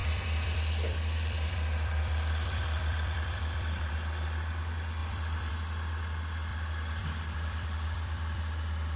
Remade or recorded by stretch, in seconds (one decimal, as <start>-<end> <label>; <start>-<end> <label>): 0.0-3.9 remade; 3.9-5.0 recorded; 5.0-5.5 remade; 5.5-6.5 recorded; 6.5-8.4 remade; 8.4-9.0 recorded